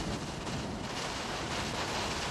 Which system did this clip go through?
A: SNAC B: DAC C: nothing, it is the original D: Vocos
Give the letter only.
C